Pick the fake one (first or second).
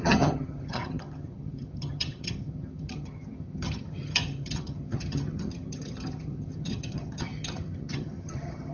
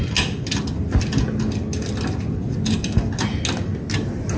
first